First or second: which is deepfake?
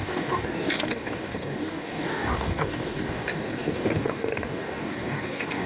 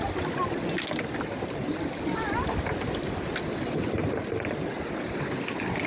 first